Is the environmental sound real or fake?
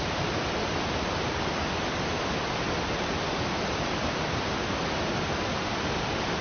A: real